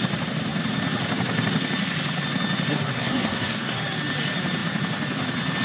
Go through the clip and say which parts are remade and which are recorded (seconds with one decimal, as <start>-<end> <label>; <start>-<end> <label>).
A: 0.0-2.7 recorded; 2.7-3.8 remade; 3.8-5.6 recorded